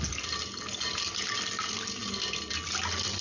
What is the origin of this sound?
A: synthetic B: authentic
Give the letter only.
B